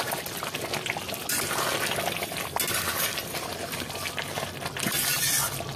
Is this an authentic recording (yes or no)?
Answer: yes